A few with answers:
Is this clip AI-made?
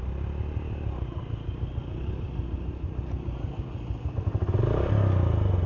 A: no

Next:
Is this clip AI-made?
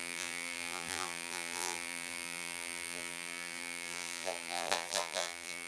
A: yes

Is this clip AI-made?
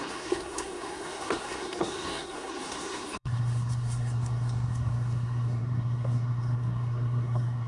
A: yes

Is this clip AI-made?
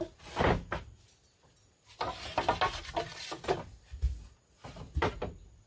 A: no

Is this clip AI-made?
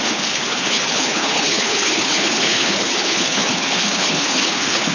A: yes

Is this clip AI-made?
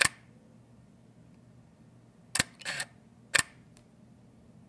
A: no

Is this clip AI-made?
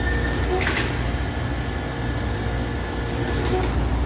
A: no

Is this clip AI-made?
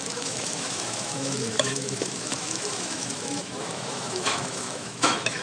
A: yes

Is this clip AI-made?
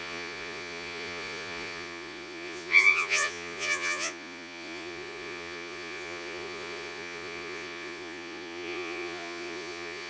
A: yes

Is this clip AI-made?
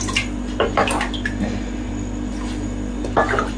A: no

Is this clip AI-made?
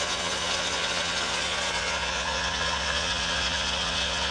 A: yes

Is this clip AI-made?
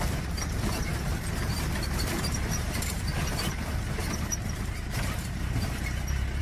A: yes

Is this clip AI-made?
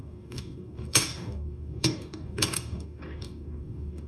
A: yes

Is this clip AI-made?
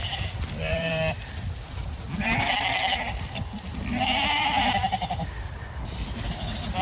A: yes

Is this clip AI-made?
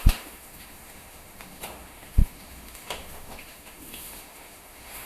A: yes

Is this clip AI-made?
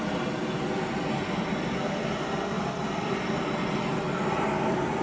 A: no